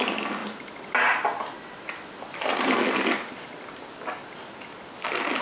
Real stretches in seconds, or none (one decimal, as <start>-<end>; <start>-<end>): 0.0-5.4